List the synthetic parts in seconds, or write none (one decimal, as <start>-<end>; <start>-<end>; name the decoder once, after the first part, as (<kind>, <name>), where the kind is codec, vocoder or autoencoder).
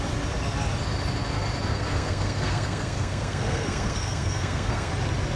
1.7-4.9 (codec, SNAC)